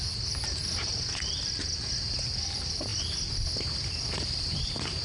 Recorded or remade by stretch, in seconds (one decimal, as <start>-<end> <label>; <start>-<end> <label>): 0.0-2.9 remade; 2.9-4.2 recorded; 4.2-5.0 remade